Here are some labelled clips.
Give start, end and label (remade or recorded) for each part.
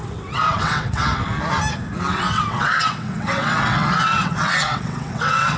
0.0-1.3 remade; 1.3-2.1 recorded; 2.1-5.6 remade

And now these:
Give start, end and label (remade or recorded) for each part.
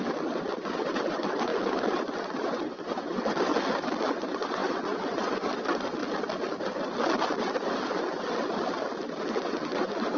0.0-3.5 remade; 3.5-4.1 recorded; 4.1-6.0 remade; 6.0-9.2 recorded; 9.2-10.2 remade